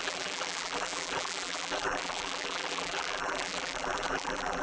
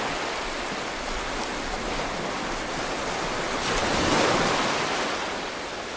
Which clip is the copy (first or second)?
first